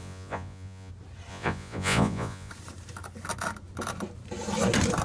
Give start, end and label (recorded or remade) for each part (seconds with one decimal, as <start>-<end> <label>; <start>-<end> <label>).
0.0-0.9 remade; 0.9-1.3 recorded; 1.3-2.5 remade; 2.5-5.0 recorded